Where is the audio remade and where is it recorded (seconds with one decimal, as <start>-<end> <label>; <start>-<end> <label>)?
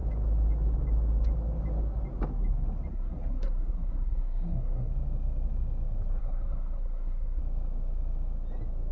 0.0-2.9 recorded; 2.9-4.9 remade; 4.9-6.2 recorded; 6.2-7.4 remade; 7.4-8.9 recorded